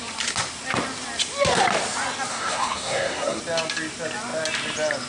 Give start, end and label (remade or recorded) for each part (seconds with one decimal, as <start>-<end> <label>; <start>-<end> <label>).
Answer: 0.0-2.3 recorded; 2.3-3.4 remade; 3.4-5.1 recorded